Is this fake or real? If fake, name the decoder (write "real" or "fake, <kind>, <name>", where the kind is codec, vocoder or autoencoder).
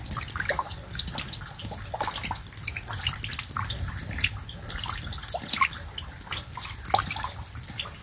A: real